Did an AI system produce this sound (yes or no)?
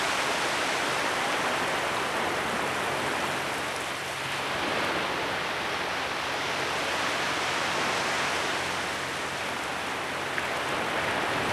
no